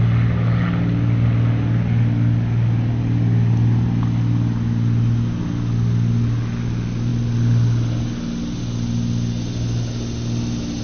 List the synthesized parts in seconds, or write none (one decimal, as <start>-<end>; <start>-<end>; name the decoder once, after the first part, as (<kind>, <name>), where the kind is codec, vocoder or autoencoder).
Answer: none